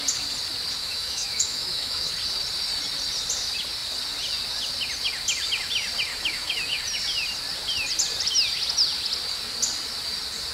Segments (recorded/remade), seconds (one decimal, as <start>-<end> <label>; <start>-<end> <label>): 0.0-0.8 recorded; 0.8-2.1 remade; 2.1-6.1 recorded; 6.1-6.8 remade; 6.8-10.5 recorded

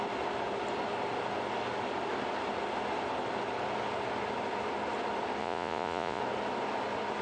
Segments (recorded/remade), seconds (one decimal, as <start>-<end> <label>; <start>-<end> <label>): 0.0-5.4 recorded; 5.4-6.2 remade; 6.2-7.2 recorded

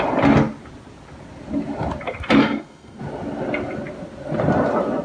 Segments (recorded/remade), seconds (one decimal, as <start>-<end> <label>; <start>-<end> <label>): 0.0-2.4 recorded; 2.4-3.0 remade; 3.0-5.0 recorded

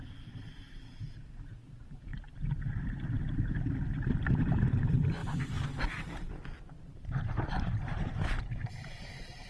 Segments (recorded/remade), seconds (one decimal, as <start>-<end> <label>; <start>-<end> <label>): 0.0-2.1 remade; 2.1-4.4 recorded; 4.4-5.2 remade; 5.2-6.7 recorded; 6.7-9.5 remade

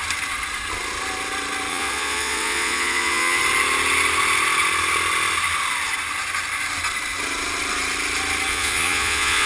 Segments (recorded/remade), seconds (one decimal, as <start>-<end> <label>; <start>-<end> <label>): 0.0-1.7 recorded; 1.7-3.4 remade; 3.4-8.5 recorded; 8.5-9.5 remade

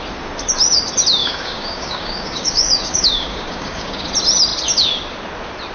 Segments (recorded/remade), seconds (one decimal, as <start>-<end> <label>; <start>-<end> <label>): 0.0-1.2 recorded; 1.2-4.1 remade; 4.1-5.7 recorded